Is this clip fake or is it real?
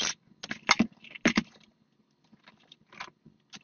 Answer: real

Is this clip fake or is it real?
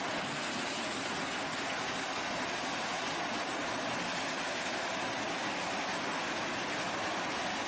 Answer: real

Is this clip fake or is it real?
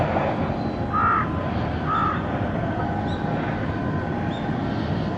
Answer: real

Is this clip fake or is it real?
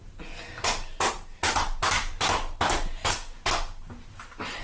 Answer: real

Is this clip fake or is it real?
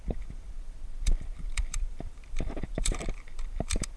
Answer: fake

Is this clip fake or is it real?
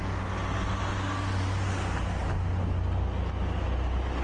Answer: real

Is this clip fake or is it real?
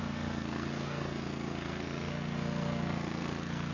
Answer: fake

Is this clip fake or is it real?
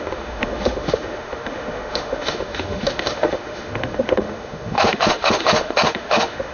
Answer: fake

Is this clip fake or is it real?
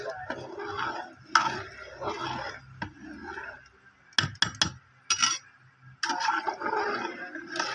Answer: real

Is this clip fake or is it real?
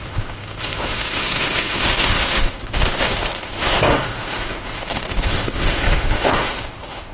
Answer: fake